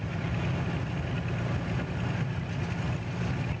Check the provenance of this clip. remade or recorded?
recorded